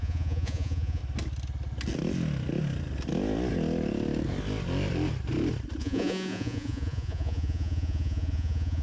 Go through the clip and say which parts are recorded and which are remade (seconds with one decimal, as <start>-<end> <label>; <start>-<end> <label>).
0.0-1.0 remade; 1.0-5.8 recorded; 5.8-8.8 remade